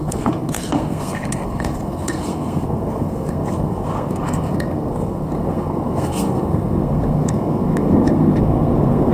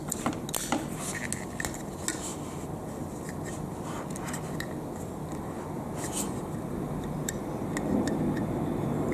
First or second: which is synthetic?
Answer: first